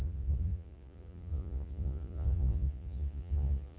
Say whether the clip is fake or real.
fake